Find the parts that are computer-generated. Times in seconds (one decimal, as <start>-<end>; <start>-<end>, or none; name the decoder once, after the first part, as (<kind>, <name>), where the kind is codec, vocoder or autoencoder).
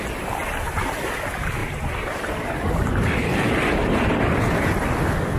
0.4-0.9 (vocoder, BigVGAN v2); 1.6-4.6